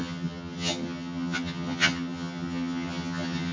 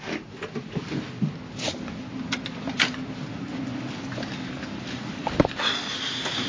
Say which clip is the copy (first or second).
first